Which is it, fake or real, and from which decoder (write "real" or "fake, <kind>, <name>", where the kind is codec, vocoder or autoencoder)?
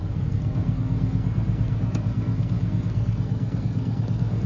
fake, codec, SNAC